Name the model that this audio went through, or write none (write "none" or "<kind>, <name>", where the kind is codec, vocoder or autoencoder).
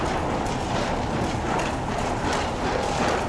none